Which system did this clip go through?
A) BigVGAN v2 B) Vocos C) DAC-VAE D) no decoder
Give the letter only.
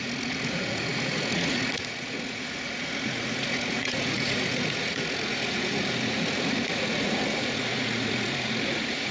B